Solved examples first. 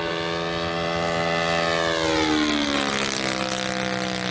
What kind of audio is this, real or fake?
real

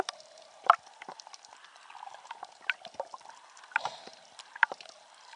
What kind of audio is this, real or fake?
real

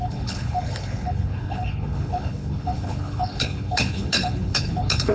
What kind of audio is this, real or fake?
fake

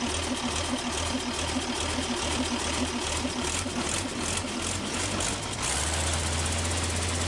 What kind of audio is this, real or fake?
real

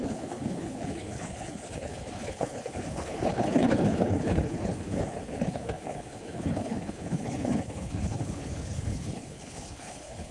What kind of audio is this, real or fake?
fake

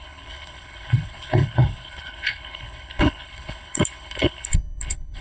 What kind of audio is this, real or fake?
fake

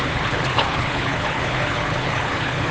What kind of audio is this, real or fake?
fake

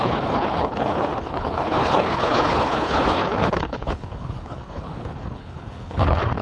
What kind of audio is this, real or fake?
fake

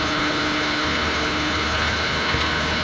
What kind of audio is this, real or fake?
fake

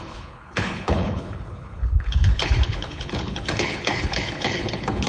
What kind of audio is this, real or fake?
fake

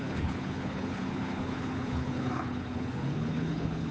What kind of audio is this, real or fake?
fake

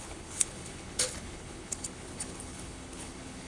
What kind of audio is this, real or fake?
fake